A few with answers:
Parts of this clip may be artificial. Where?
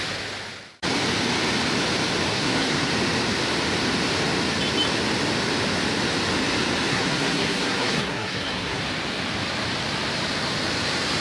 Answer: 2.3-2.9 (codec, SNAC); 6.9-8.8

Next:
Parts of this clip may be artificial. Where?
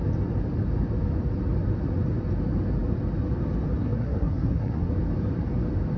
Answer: 3.8-4.9 (codec, SNAC)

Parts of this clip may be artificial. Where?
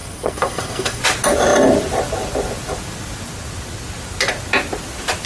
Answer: 0.0-1.0 (codec, SNAC)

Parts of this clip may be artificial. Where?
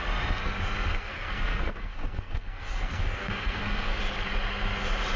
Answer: 0.9-4.0 (codec, SNAC)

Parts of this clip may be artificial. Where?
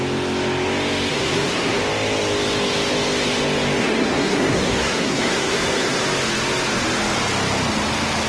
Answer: 1.1-1.8 (codec, SNAC); 3.8-6.0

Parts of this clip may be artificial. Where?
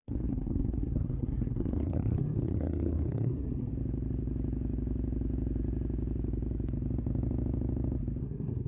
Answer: 0.0-3.7 (codec, SNAC); 8.2-8.7